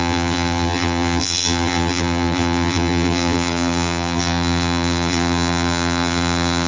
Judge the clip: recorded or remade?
remade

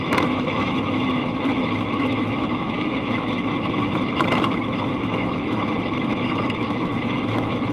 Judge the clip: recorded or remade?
remade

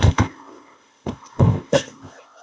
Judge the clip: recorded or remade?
remade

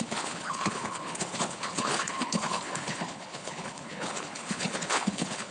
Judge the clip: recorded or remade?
remade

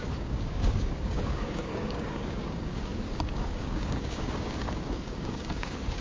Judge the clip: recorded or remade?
remade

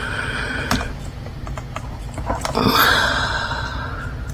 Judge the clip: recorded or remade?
recorded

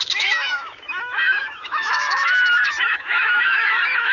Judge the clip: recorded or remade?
remade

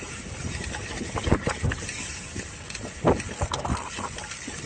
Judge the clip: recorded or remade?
recorded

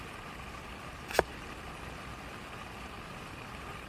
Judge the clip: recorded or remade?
recorded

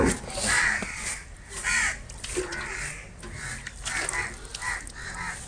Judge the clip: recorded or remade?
recorded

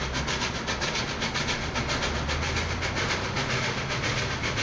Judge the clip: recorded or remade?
recorded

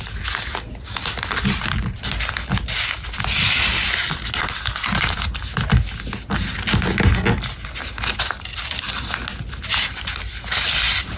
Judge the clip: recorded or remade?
recorded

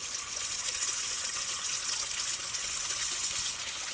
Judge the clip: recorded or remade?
remade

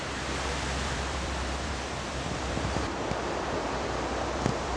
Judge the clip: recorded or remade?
remade